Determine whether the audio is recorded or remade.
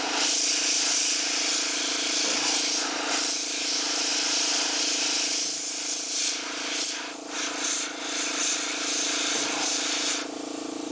remade